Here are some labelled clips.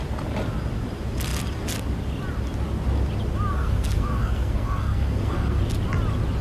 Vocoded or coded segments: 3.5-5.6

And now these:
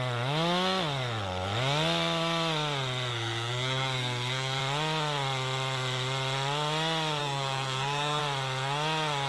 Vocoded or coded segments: 3.1-4.6; 7.2-8.2

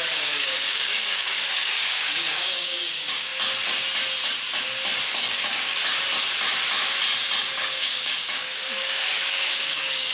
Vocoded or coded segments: 0.0-3.3; 5.1-5.8; 7.4-10.1

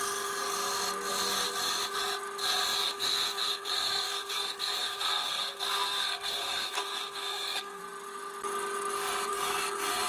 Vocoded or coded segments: 2.9-7.8; 9.3-10.1

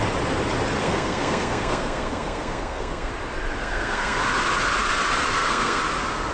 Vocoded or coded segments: 0.8-3.1; 3.6-4.2; 5.2-5.8

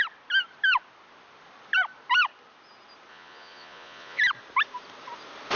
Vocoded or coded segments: 3.1-4.2